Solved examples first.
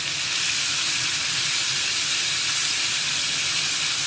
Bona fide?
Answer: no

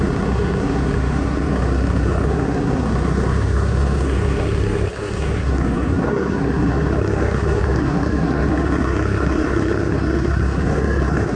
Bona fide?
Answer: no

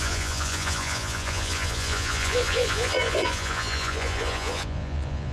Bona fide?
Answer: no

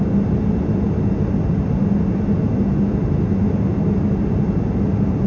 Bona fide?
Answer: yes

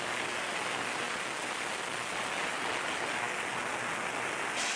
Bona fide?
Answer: yes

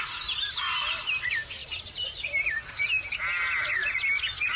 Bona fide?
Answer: yes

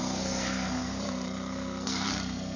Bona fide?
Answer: no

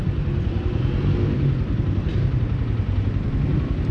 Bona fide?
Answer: yes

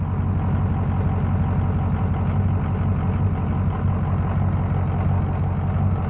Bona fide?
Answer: yes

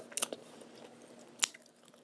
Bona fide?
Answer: yes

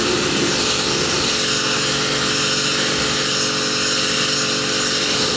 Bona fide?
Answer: yes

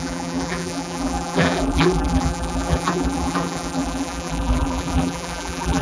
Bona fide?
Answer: no